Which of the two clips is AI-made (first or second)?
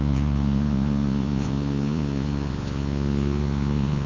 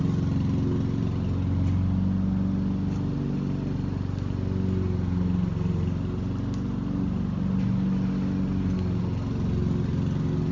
first